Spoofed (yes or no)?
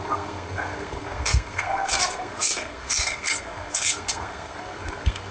yes